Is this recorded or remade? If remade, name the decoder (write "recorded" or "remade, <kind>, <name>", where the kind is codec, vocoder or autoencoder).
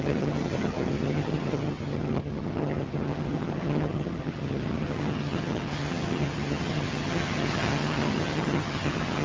remade, vocoder, HiFi-GAN